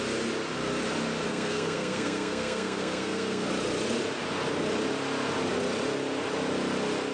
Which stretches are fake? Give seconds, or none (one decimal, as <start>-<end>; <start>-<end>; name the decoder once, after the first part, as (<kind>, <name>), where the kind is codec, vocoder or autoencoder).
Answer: 1.3-3.5 (codec, SNAC)

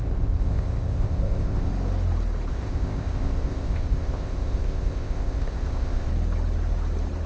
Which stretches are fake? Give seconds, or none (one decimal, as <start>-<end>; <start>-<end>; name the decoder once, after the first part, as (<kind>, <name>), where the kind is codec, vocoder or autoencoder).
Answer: 0.0-1.7 (codec, ZipCodec); 2.5-6.1

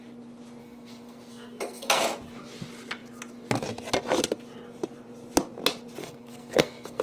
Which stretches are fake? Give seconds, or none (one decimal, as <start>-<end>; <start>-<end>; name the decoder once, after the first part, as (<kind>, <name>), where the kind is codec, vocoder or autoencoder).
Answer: 0.6-2.0 (codec, SNAC); 6.0-7.0

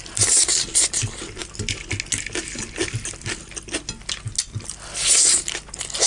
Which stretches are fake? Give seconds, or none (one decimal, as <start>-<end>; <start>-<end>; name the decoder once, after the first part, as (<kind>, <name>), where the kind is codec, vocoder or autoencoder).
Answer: none